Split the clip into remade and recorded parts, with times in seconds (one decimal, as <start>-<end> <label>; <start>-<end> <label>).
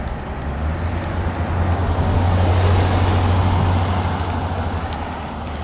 0.0-5.6 recorded